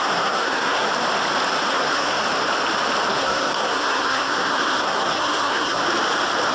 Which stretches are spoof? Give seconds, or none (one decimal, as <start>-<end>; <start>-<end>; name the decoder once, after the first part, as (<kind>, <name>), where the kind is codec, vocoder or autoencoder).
0.0-0.9 (codec, SNAC); 1.7-2.2; 3.1-5.8